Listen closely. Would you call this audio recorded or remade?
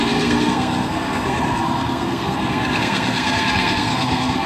remade